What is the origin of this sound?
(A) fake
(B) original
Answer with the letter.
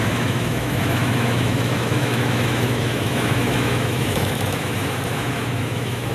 A